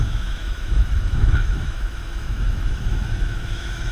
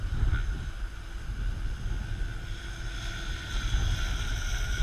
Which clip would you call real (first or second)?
second